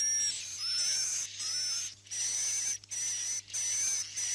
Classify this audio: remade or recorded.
recorded